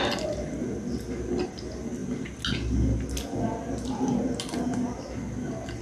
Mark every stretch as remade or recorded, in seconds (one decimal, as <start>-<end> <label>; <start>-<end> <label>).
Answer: 0.0-5.8 recorded